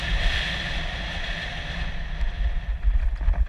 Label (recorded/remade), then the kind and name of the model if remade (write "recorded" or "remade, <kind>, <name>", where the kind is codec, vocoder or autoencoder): remade, vocoder, BigVGAN v2